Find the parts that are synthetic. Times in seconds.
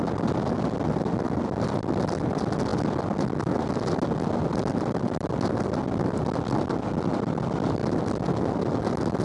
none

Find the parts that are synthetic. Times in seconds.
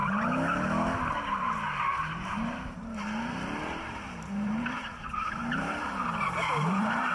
1.1-7.1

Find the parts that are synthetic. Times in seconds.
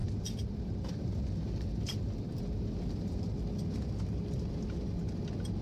0.0-3.4